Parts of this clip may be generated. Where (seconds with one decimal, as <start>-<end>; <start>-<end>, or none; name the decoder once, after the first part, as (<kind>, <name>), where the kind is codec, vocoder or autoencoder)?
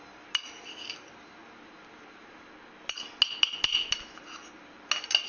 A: none